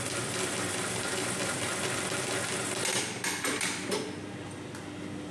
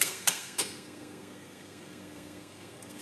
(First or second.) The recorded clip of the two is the first